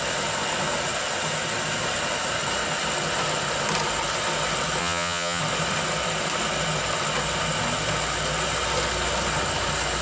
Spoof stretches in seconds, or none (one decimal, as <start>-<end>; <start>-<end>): 4.8-5.4